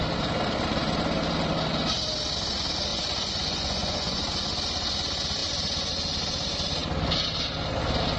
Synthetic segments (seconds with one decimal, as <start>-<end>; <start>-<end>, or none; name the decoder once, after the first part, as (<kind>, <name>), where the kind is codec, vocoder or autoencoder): 2.9-4.2 (vocoder, Vocos)